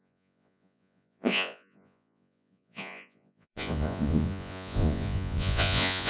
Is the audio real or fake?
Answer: fake